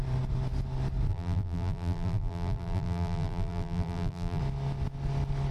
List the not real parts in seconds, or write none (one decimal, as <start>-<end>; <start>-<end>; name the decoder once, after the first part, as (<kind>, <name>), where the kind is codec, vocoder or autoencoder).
1.1-4.4 (vocoder, BigVGAN v2)